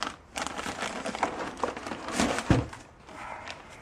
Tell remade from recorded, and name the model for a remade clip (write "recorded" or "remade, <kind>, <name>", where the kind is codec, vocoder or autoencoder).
recorded